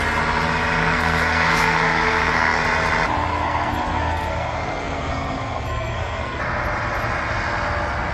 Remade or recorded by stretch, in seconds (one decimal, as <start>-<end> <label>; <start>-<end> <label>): 0.0-0.8 recorded; 0.8-2.6 remade; 2.6-3.3 recorded; 3.3-6.4 remade; 6.4-8.1 recorded